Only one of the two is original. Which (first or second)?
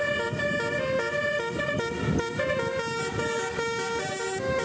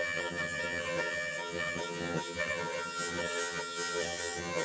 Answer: first